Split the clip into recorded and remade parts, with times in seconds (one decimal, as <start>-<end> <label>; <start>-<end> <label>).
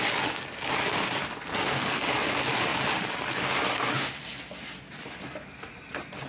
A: 0.0-1.5 recorded; 1.5-2.0 remade; 2.0-6.3 recorded